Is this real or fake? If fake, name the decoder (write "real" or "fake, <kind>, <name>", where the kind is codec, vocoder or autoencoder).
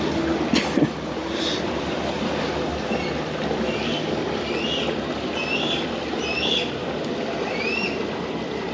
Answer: real